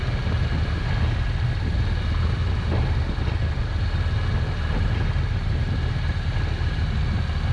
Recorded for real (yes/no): yes